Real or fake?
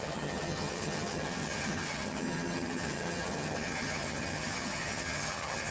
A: fake